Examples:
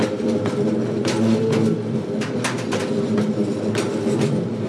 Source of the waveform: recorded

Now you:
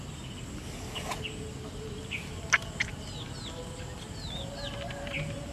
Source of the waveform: recorded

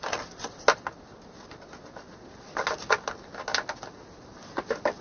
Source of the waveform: recorded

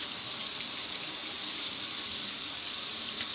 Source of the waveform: remade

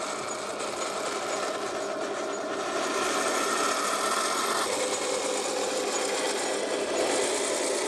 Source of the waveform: recorded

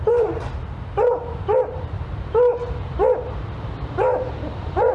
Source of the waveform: remade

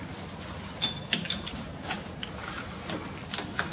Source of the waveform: recorded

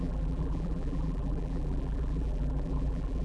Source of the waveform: remade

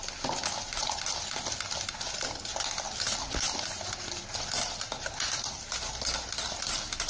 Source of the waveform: recorded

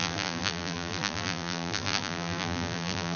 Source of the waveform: remade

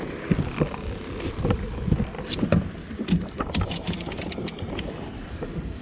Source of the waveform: recorded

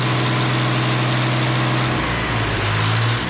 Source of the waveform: recorded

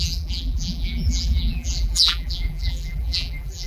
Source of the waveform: remade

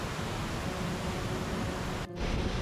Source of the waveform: recorded